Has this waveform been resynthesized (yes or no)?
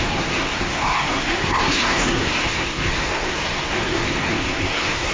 yes